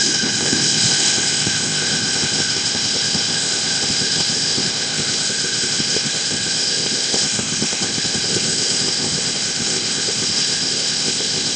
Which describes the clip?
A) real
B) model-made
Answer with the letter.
B